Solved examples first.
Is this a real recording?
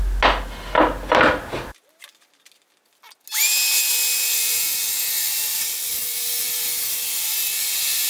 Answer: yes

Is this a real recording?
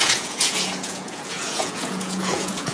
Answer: no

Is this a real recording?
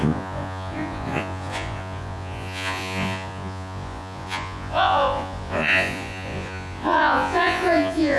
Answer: no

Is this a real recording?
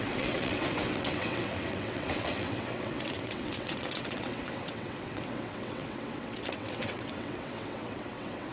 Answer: no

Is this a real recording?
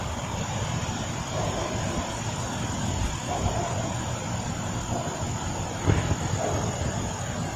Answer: yes